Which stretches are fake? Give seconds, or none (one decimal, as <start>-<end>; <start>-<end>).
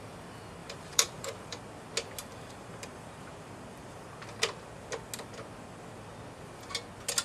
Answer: 0.6-1.6; 2.2-4.2